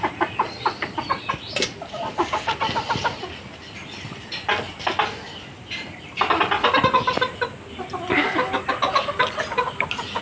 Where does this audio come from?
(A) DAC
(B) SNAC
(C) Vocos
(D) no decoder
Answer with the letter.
D